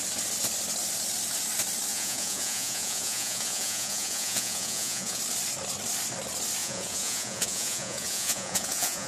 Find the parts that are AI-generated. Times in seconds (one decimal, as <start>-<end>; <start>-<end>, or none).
1.9-5.2; 6.6-9.1